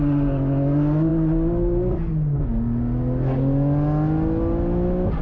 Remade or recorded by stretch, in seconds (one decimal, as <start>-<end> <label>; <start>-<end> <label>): 0.0-5.2 recorded